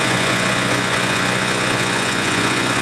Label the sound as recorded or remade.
remade